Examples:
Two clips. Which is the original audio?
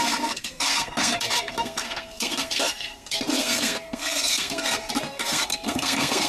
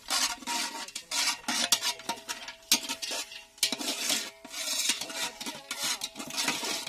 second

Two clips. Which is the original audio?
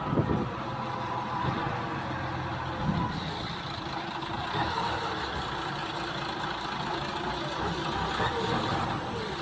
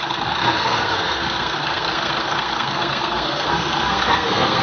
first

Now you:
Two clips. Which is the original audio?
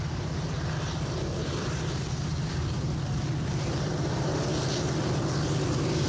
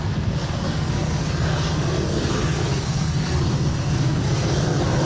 first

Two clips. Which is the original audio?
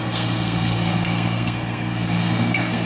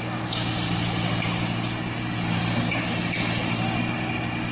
second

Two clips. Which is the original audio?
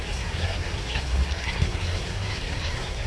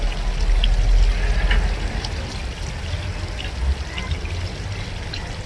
second